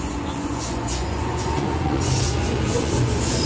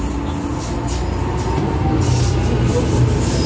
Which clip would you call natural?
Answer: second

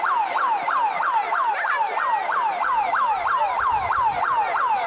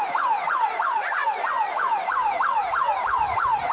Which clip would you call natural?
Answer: first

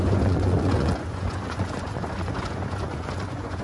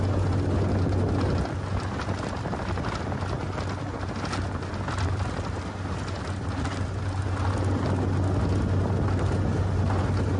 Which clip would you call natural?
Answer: second